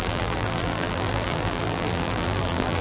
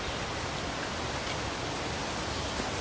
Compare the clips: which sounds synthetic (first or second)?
first